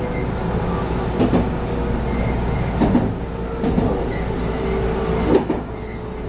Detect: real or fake real